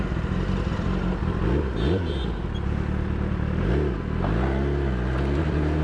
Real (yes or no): yes